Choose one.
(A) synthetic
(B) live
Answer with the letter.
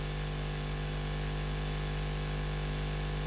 B